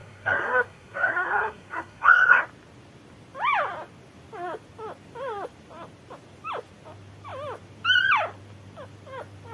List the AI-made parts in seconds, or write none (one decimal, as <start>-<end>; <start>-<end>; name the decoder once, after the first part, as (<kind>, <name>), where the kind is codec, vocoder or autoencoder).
0.0-2.4 (codec, SNAC)